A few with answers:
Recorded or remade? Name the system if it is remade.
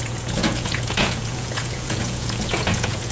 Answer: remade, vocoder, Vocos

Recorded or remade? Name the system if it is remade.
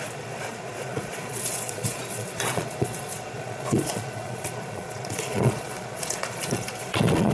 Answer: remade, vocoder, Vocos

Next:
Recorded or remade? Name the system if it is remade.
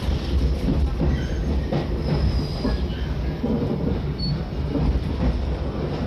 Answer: recorded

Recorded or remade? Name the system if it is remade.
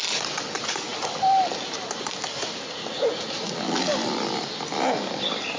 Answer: recorded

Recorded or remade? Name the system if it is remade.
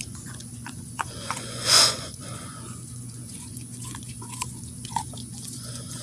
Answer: remade, vocoder, Vocos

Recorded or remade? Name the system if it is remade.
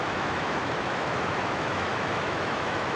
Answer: remade, autoencoder, DAC-VAE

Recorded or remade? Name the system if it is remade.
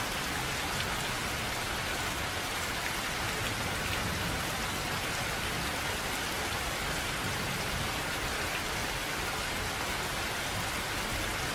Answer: recorded